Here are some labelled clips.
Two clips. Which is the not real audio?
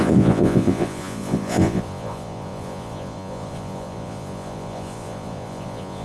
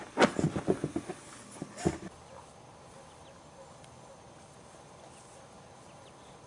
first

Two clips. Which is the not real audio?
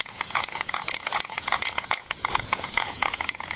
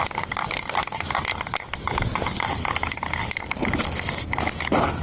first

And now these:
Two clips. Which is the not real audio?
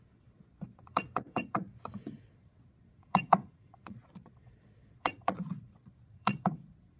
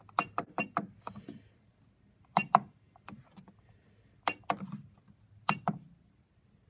first